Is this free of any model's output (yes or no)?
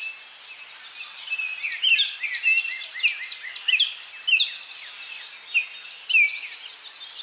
yes